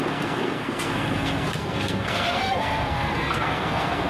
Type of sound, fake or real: fake